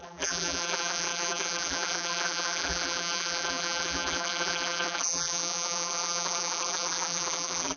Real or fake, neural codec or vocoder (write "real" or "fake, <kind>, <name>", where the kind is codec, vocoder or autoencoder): fake, vocoder, BigVGAN v2